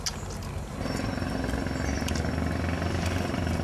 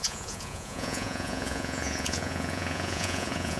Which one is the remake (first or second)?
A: second